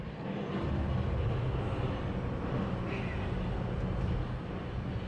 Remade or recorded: recorded